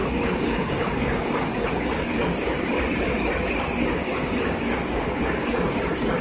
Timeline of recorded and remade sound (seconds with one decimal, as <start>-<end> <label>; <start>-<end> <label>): 0.0-2.9 remade; 2.9-3.7 recorded; 3.7-5.8 remade; 5.8-6.2 recorded